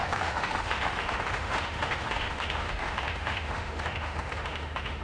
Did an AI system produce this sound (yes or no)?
yes